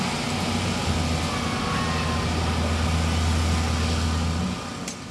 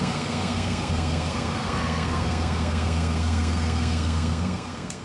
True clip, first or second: first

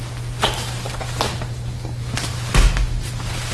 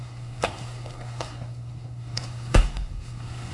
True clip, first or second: first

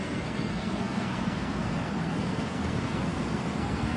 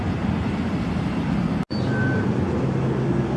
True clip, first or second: second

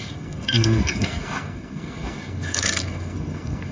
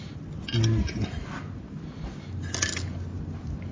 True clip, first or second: second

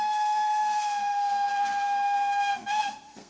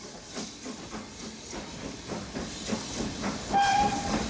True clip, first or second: second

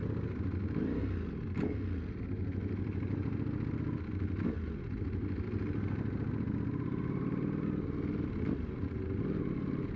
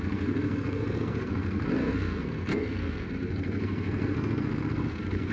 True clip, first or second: first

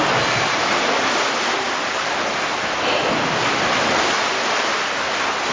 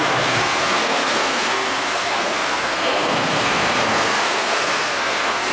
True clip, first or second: first